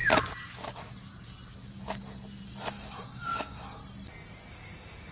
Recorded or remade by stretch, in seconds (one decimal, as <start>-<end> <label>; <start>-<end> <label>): 0.0-2.7 recorded; 2.7-3.8 remade; 3.8-4.5 recorded; 4.5-5.1 remade